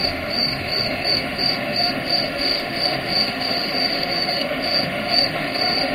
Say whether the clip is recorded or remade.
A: remade